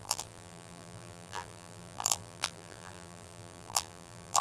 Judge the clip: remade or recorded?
remade